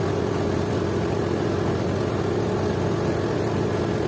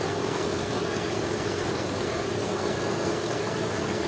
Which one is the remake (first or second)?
second